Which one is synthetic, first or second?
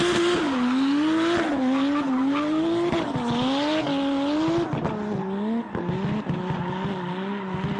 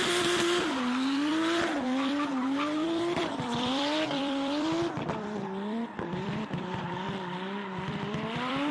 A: second